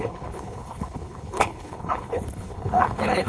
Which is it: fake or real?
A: fake